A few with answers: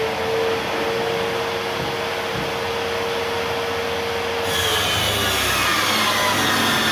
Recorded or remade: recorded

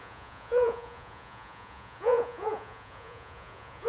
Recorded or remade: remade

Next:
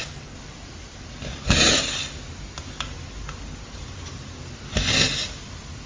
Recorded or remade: recorded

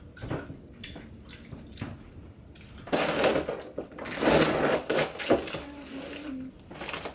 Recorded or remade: recorded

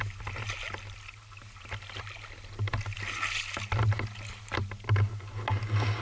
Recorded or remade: recorded